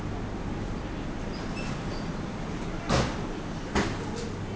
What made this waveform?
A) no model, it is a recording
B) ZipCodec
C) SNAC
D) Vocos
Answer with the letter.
A